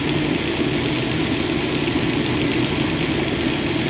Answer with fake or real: real